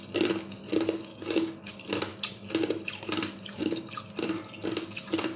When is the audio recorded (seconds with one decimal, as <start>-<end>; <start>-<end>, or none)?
0.0-1.1; 1.7-5.4